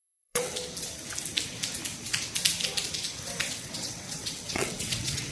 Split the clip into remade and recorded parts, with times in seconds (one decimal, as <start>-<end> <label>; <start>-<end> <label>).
0.0-0.5 remade; 0.5-3.5 recorded; 3.5-5.3 remade